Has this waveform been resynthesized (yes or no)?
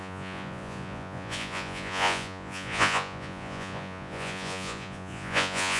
yes